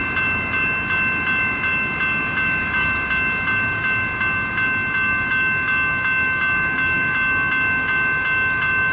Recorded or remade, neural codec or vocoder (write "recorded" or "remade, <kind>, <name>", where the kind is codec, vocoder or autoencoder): recorded